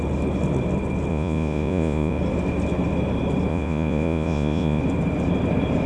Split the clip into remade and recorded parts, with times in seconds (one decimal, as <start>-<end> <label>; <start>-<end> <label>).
0.0-1.1 recorded; 1.1-2.2 remade; 2.2-3.5 recorded; 3.5-4.8 remade; 4.8-5.9 recorded